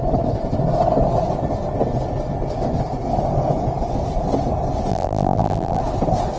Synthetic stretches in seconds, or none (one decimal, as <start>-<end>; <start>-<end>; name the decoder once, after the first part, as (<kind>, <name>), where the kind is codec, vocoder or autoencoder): 4.9-5.8 (vocoder, BigVGAN v2)